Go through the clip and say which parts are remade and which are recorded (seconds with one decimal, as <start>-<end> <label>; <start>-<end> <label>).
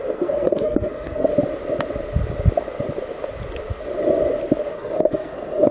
0.0-1.3 remade; 1.3-4.7 recorded; 4.7-5.7 remade